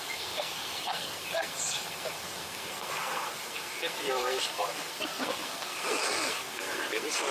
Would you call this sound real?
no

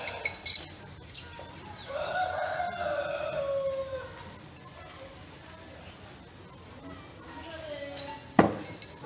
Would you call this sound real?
yes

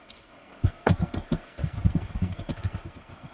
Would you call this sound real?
no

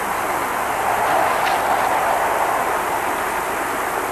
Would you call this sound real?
yes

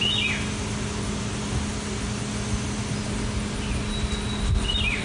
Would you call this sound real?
yes